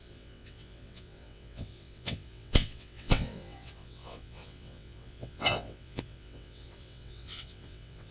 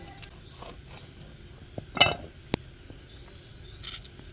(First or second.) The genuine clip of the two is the second